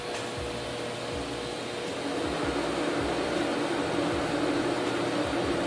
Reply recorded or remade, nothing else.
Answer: recorded